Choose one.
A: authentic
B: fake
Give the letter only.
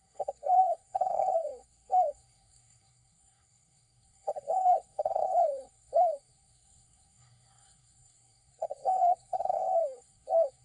B